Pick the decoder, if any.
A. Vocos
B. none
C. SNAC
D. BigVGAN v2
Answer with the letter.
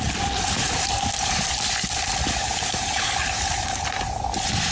D